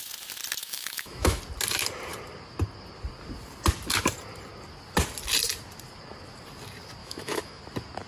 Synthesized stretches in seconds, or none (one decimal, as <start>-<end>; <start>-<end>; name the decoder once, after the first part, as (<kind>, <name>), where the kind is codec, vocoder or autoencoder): 0.6-1.4 (autoencoder, DAC-VAE); 7.0-7.6